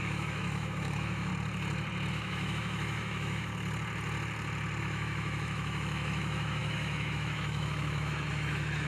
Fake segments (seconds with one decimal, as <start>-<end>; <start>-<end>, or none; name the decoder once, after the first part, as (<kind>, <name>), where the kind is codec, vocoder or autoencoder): 0.0-1.3 (autoencoder, DAC-VAE); 2.1-3.5; 4.8-8.9